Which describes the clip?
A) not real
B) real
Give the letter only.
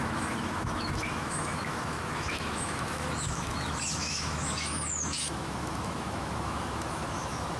A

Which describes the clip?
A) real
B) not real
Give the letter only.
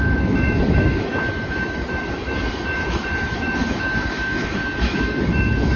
B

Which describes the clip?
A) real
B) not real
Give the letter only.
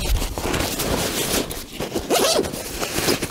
A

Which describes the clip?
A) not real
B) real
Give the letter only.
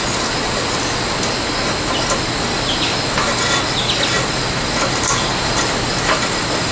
B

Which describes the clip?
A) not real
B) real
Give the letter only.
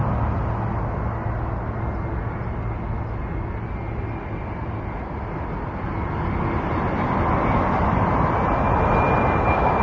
B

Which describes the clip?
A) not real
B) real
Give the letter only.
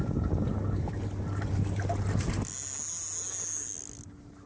B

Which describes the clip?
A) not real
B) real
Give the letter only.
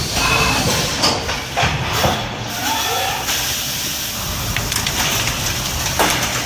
B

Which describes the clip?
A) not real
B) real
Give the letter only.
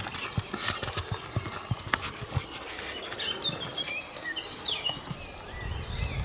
B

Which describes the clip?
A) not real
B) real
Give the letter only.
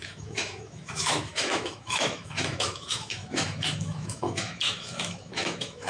A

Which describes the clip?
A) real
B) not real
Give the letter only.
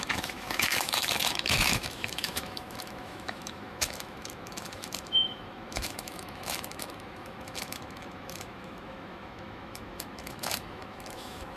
B